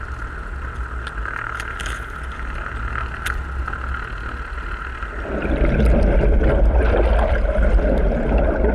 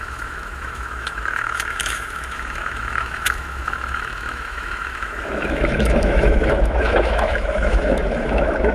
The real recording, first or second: first